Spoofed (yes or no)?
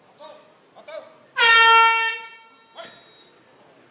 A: no